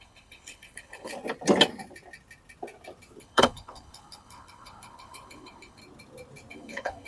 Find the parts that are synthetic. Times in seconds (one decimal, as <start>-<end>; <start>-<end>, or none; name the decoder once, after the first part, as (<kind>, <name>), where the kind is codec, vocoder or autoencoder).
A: 0.0-1.1 (codec, HILCodec); 3.2-5.8; 6.5-7.1